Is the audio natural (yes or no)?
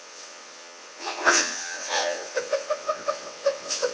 no